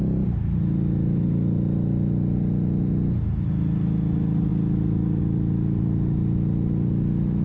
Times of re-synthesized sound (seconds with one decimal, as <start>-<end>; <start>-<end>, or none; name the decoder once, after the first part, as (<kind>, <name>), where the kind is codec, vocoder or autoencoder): none